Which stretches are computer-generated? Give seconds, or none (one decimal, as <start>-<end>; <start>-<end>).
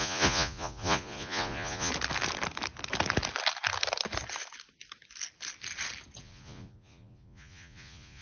0.0-1.9; 6.2-8.2